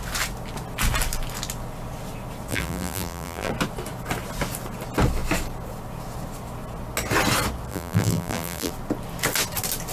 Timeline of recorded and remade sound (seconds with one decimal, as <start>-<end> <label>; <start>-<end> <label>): 0.0-2.5 recorded; 2.5-3.5 remade; 3.5-7.7 recorded; 7.7-8.7 remade; 8.7-9.9 recorded